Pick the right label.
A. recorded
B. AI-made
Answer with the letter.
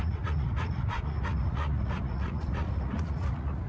B